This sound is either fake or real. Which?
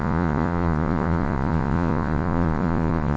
fake